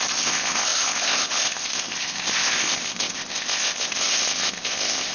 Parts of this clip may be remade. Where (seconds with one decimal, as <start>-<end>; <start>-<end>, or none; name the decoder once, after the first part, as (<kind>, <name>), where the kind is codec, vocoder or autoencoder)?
0.0-5.1 (codec, ZipCodec)